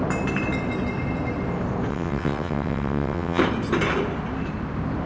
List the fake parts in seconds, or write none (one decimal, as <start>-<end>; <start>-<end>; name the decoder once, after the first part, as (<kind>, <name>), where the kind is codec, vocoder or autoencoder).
1.9-3.4 (vocoder, WaveNeXt)